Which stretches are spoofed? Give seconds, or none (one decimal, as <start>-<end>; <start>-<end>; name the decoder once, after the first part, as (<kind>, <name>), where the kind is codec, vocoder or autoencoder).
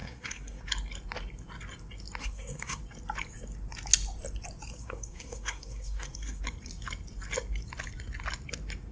0.0-0.6 (codec, SNAC); 2.2-2.8; 4.8-6.4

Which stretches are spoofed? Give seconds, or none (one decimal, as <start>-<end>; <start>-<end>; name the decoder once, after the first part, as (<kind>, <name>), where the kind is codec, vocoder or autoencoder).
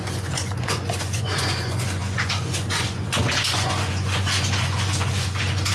0.0-5.7 (vocoder, Vocos)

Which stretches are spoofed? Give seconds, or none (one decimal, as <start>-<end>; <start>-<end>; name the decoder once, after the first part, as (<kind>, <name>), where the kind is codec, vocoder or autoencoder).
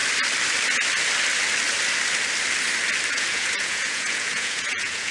3.1-5.1 (vocoder, Vocos)